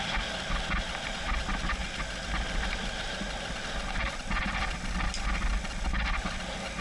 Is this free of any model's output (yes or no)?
yes